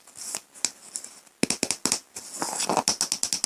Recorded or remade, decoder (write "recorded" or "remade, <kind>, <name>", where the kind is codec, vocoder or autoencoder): recorded